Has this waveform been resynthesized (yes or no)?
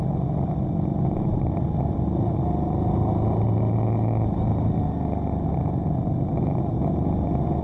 no